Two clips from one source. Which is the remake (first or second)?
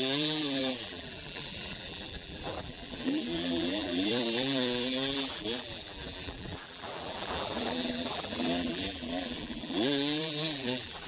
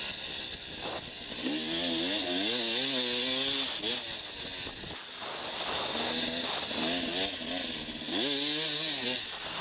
first